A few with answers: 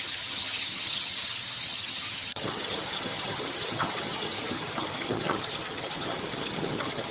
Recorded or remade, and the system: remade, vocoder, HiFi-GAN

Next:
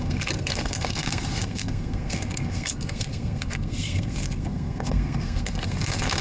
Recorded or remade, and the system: remade, codec, SNAC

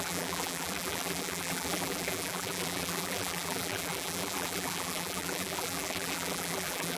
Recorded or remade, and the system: remade, vocoder, BigVGAN v2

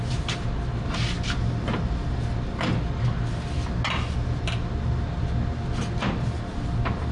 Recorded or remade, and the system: recorded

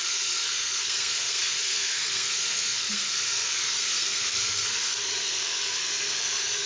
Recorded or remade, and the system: remade, codec, SNAC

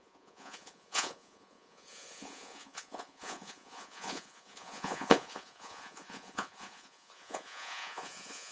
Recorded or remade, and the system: remade, vocoder, Vocos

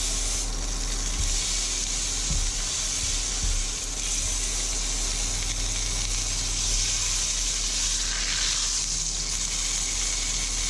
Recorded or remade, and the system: recorded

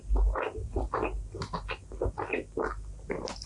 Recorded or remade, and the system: recorded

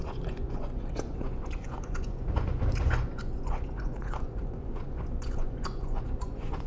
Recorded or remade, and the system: remade, vocoder, Vocos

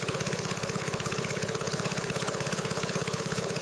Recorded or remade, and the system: remade, codec, HILCodec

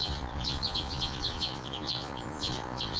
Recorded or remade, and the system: remade, vocoder, Vocos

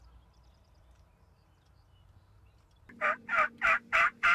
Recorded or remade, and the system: remade, vocoder, BigVGAN v2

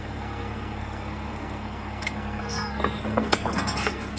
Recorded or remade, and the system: remade, codec, SNAC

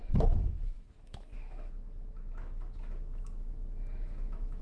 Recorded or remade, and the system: remade, autoencoder, DAC-VAE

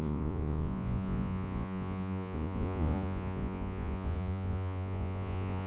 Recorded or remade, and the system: remade, vocoder, Vocos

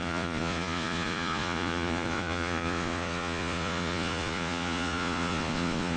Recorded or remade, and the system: remade, vocoder, Vocos